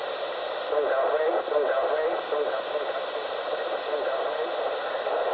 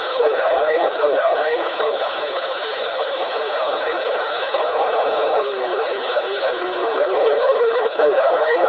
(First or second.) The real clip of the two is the first